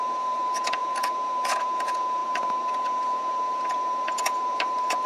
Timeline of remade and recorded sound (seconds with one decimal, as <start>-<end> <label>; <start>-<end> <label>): 0.0-5.1 remade